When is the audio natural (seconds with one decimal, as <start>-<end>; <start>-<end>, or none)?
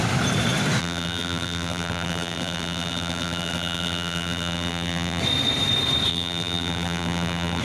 0.0-0.8; 5.2-6.1